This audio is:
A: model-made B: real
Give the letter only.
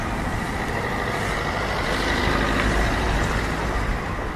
B